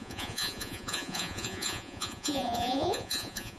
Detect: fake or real fake